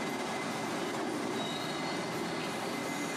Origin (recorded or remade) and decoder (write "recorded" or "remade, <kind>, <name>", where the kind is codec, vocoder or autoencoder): recorded